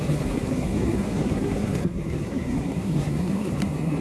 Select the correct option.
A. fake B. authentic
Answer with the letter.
A